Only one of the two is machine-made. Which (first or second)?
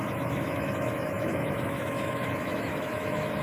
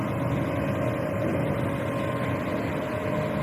first